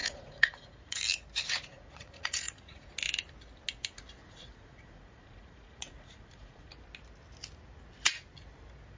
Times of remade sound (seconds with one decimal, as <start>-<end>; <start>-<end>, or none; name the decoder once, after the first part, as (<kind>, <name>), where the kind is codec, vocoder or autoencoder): 0.0-1.0 (vocoder, Vocos); 1.7-2.9; 4.2-6.7